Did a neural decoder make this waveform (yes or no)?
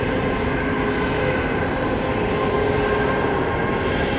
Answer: no